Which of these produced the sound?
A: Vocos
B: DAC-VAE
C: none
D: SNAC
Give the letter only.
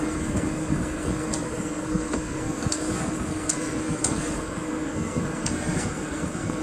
D